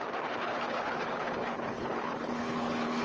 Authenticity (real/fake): fake